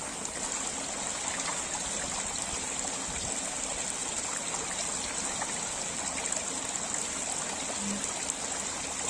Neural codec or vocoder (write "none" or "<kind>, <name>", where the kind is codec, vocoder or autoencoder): none